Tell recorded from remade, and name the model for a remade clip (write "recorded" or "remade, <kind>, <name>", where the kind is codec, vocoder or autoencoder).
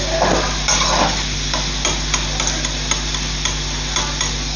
recorded